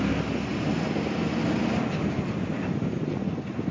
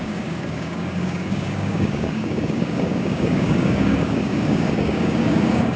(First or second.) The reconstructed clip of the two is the second